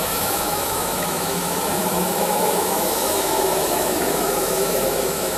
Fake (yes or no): yes